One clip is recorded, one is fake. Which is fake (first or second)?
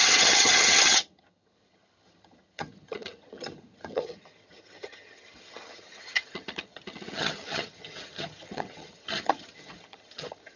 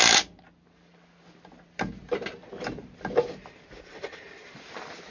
first